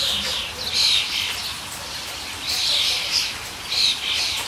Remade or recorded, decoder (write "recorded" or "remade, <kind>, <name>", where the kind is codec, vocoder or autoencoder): recorded